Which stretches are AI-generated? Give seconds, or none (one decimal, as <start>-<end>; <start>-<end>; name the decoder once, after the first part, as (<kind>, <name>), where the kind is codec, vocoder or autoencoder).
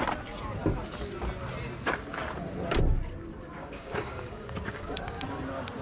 3.6-5.2 (codec, DAC)